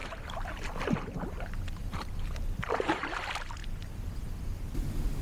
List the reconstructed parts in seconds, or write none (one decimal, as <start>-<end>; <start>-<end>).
0.0-3.1